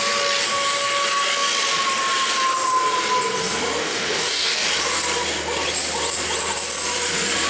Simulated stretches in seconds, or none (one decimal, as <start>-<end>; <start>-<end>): 3.8-4.7

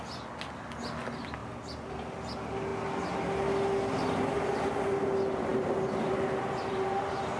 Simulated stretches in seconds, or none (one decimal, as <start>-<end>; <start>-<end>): none

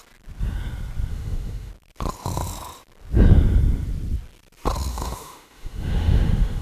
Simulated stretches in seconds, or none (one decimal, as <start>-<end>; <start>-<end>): 1.1-1.7; 4.9-6.6

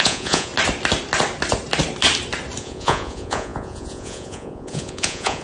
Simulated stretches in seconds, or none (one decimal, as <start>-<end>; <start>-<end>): 0.0-0.5; 2.6-5.4

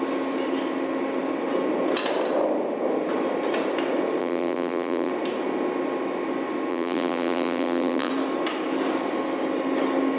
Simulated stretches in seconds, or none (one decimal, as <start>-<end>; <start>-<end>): 4.2-5.1; 6.7-8.1